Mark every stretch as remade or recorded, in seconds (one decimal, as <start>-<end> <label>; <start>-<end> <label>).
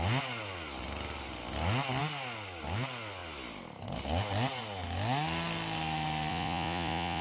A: 0.0-6.3 recorded; 6.3-7.2 remade